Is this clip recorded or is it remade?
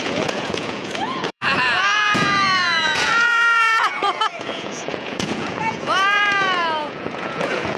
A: remade